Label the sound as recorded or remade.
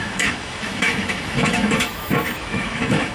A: remade